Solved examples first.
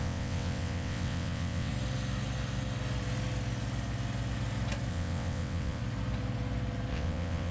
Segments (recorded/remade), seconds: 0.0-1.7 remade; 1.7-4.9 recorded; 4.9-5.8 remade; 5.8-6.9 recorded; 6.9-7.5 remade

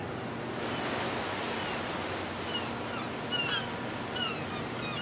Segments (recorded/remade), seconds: 0.0-5.0 recorded

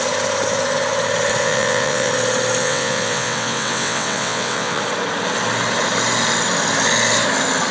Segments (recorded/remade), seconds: 0.0-1.4 recorded; 1.4-2.1 remade; 2.1-2.6 recorded; 2.6-4.8 remade; 4.8-7.7 recorded

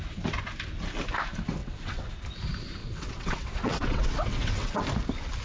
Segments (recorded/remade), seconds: 0.0-1.6 recorded; 1.6-2.1 remade; 2.1-2.8 recorded; 2.8-4.8 remade; 4.8-5.4 recorded

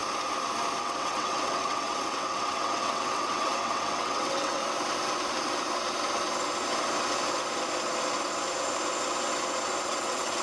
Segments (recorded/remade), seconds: 0.0-0.8 recorded; 0.8-4.6 remade; 4.6-9.8 recorded; 9.8-10.4 remade

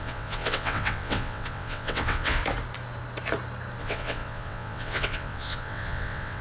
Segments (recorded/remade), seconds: 0.0-2.4 remade; 2.4-3.8 recorded; 3.8-6.4 remade